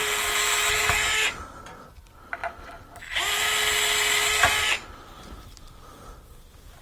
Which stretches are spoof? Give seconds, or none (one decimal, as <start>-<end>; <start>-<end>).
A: none